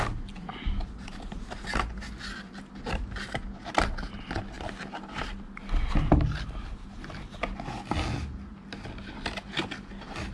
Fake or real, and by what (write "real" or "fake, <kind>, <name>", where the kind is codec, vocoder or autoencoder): real